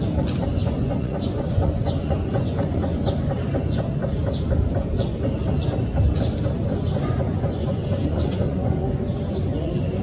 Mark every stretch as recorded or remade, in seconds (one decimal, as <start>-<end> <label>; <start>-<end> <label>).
0.0-0.5 recorded; 0.5-3.3 remade; 3.3-6.7 recorded; 6.7-10.0 remade